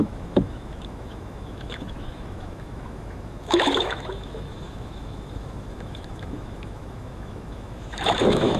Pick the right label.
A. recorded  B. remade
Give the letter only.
B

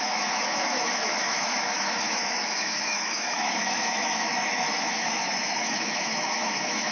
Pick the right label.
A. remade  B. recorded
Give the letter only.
A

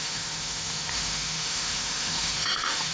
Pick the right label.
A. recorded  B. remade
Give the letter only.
B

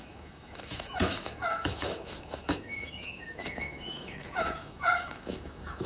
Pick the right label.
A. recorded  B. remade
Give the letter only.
B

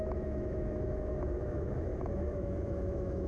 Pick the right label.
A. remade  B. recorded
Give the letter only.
A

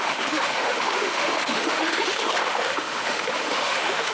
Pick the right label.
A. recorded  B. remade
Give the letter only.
B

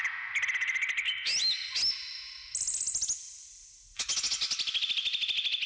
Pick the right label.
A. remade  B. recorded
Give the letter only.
B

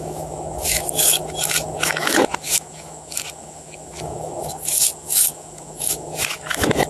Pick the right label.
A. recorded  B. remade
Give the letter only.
B